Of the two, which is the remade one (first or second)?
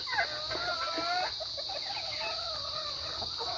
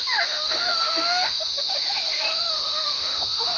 second